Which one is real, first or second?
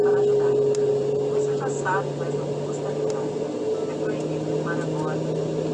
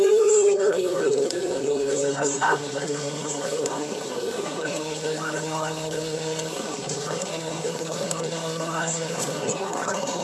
first